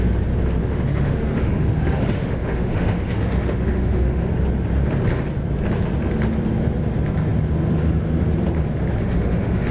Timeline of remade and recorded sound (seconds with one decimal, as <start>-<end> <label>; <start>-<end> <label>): 0.0-0.6 recorded; 0.6-4.3 remade; 4.3-9.0 recorded; 9.0-9.7 remade